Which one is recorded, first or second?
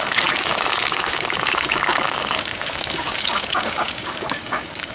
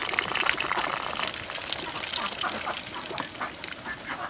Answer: second